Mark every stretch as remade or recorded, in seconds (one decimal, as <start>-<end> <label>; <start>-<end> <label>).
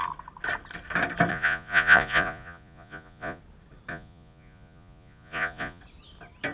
0.0-1.3 recorded; 1.3-3.4 remade; 3.4-3.9 recorded; 3.9-5.8 remade; 5.8-6.5 recorded